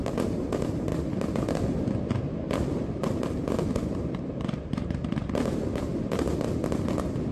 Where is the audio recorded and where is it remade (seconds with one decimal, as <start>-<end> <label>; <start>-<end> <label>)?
0.0-0.9 remade; 0.9-3.6 recorded; 3.6-5.9 remade; 5.9-7.3 recorded